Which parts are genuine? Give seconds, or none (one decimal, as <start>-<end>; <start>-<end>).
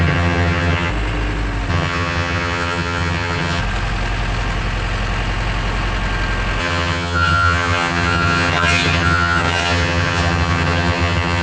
0.9-1.7; 3.6-6.6